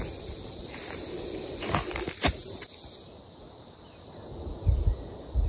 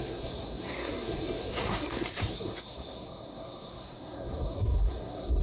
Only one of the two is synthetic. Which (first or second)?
second